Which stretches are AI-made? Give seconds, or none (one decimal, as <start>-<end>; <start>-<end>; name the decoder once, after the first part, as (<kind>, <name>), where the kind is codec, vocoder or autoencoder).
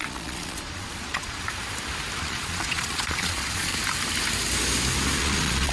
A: 0.0-1.4 (vocoder, Vocos); 2.2-3.7; 5.2-5.7